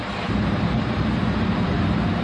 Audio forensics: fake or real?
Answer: fake